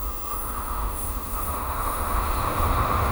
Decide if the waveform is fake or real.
fake